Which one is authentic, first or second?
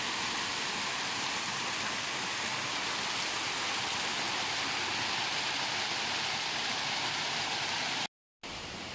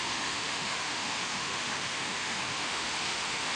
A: first